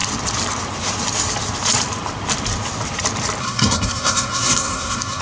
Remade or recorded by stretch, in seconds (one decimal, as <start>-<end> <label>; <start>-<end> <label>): 0.0-3.4 recorded; 3.4-5.2 remade